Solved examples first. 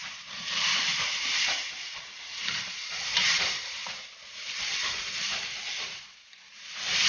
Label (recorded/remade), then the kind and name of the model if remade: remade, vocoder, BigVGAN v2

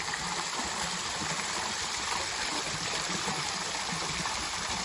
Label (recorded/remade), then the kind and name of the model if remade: remade, vocoder, BigVGAN v2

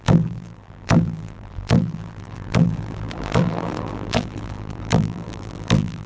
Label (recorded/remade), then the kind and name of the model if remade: remade, vocoder, BigVGAN v2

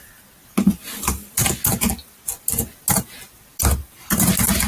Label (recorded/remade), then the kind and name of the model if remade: recorded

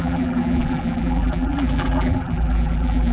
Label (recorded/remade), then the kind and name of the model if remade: remade, vocoder, BigVGAN v2